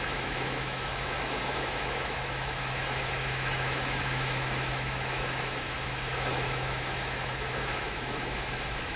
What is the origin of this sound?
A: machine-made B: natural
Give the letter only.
A